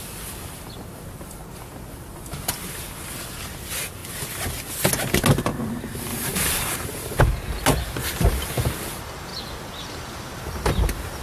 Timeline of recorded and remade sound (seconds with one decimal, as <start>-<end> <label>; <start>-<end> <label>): 0.0-6.1 recorded; 6.1-7.2 remade; 7.2-11.2 recorded